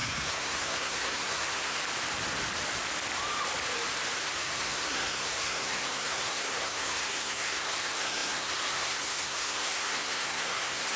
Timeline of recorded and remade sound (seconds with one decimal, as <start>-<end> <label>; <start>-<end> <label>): 0.0-1.8 remade; 1.8-4.2 recorded; 4.2-11.0 remade